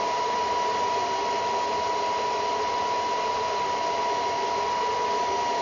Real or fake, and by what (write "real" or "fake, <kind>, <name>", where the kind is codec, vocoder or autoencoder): real